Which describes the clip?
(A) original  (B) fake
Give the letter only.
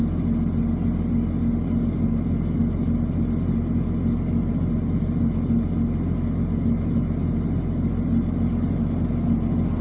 A